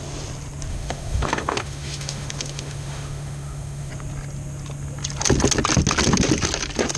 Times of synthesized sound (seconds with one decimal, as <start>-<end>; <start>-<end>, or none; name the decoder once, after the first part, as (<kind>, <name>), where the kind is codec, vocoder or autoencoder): 0.7-3.9 (autoencoder, DAC-VAE)